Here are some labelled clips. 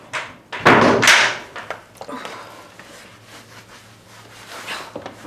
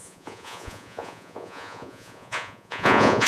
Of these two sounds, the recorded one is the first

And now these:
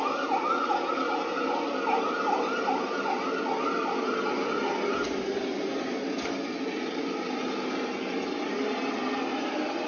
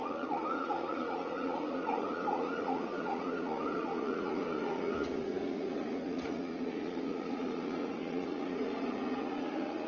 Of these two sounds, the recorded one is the first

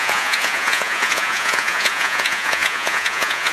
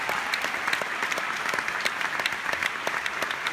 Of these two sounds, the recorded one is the second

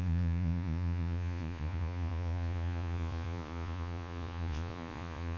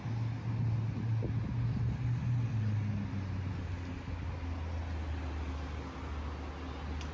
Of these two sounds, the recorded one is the second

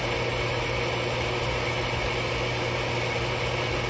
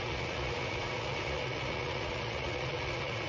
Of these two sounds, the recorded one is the first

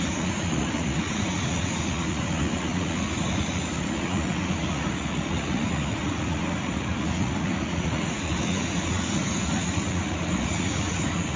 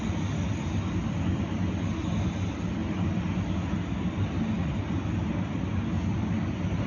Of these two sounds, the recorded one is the second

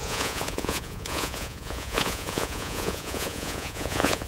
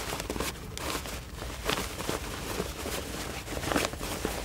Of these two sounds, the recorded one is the second